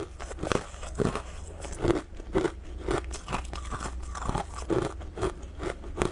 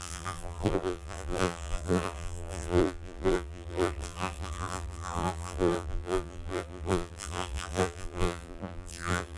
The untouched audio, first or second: first